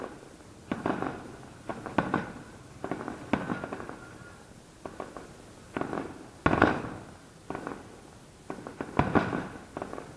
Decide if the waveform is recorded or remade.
recorded